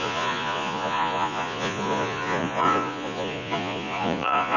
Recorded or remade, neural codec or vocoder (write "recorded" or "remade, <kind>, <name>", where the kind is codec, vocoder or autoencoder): remade, vocoder, Vocos